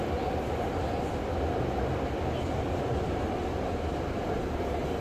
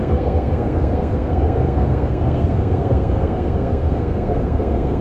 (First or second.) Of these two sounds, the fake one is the second